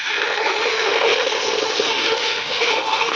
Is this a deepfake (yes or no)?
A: yes